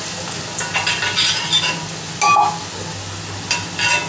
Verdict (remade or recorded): recorded